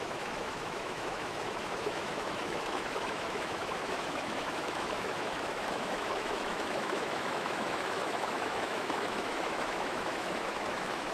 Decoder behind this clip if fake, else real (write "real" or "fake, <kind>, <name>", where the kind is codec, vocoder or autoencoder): fake, autoencoder, DAC-VAE